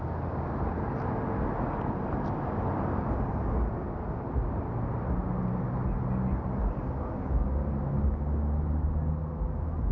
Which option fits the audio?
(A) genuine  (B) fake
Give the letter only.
A